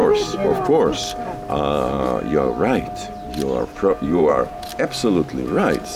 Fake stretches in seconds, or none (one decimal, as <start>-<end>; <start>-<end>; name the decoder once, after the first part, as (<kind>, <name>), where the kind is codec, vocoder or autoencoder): 3.6-4.7 (vocoder, Vocos); 5.3-6.0